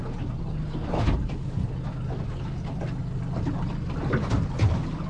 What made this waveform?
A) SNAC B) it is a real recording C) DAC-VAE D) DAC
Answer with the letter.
B